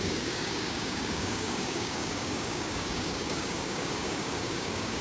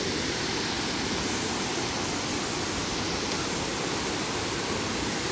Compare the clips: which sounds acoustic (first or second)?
second